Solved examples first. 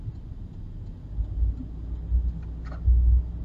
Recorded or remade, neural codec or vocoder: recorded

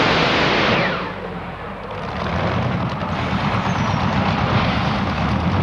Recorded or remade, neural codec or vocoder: recorded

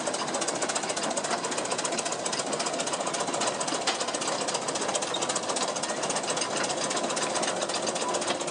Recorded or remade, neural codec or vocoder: recorded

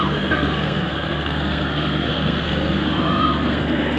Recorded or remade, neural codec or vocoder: remade, codec, SNAC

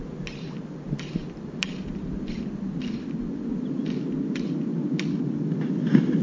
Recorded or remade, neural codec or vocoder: recorded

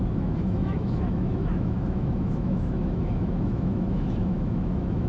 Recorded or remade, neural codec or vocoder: remade, autoencoder, DAC-VAE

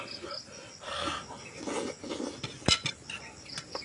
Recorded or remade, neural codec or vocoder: recorded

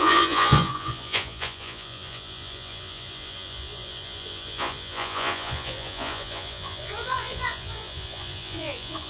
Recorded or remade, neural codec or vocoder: remade, vocoder, Vocos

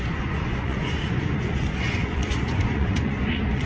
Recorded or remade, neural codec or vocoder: remade, vocoder, Vocos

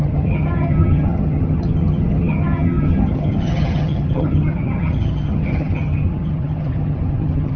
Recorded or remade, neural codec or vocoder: remade, vocoder, HiFi-GAN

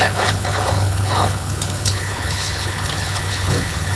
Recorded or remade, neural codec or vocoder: remade, codec, HILCodec